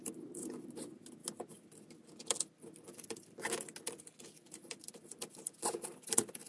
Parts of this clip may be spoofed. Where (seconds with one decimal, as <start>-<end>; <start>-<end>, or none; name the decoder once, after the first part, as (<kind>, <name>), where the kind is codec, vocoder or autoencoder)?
none